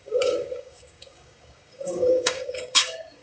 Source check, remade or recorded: remade